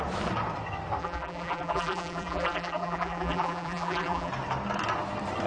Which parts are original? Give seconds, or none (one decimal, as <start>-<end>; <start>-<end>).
0.0-1.0; 4.3-5.5